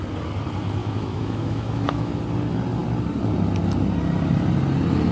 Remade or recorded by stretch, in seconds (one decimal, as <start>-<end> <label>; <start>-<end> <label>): 0.0-0.8 recorded; 0.8-2.1 remade; 2.1-5.1 recorded